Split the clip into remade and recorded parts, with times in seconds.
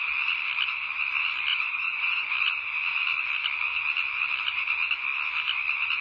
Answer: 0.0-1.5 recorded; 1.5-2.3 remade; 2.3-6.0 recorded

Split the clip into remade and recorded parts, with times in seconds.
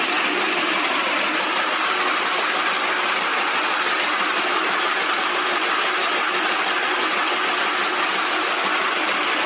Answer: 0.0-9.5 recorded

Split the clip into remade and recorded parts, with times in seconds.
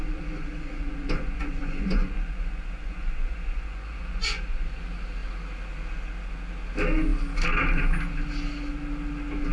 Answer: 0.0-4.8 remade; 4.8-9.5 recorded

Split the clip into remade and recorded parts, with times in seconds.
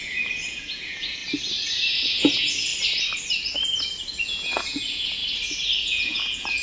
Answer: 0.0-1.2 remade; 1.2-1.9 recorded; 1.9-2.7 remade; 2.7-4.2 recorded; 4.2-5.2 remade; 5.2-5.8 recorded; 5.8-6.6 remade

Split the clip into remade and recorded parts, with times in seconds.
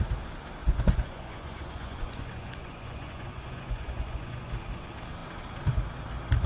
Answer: 0.0-0.6 recorded; 0.6-4.5 remade; 4.5-6.5 recorded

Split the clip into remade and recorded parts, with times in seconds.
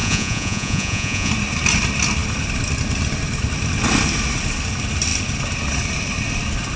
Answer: 0.0-1.3 remade; 1.3-6.8 recorded